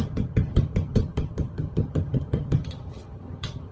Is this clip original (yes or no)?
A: no